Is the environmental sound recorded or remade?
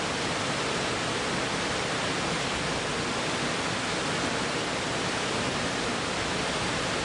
recorded